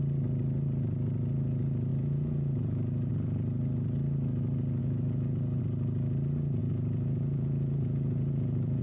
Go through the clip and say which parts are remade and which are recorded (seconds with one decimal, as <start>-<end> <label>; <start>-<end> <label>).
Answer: 0.0-1.9 recorded; 1.9-3.1 remade; 3.1-4.8 recorded; 4.8-5.6 remade; 5.6-6.6 recorded; 6.6-8.8 remade